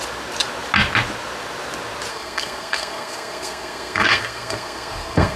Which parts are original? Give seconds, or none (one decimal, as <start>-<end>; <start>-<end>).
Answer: 0.0-2.1